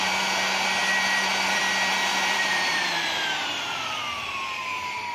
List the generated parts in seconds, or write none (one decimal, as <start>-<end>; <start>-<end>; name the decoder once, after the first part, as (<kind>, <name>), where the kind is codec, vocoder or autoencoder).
0.8-1.6 (vocoder, BigVGAN v2); 2.1-4.0